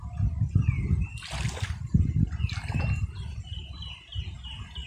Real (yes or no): yes